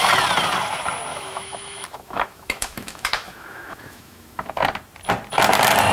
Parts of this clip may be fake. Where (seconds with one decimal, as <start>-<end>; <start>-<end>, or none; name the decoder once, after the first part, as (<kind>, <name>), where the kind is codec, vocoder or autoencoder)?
1.1-4.6 (autoencoder, DAC-VAE)